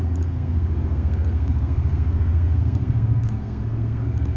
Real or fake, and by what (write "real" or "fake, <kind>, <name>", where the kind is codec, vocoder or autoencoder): fake, codec, SNAC